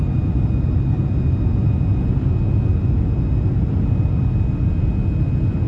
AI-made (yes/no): no